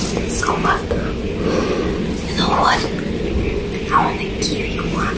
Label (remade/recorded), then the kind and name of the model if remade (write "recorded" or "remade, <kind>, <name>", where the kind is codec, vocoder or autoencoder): recorded